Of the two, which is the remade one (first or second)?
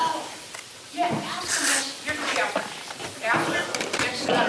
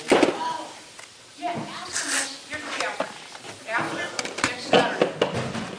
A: first